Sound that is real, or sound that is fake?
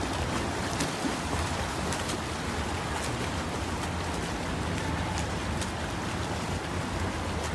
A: real